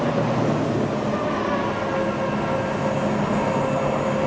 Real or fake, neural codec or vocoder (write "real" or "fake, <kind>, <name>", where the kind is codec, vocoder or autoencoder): real